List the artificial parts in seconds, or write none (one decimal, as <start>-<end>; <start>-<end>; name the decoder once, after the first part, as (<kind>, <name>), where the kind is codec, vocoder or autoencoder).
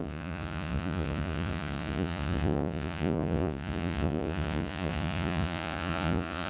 0.0-6.5 (vocoder, Vocos)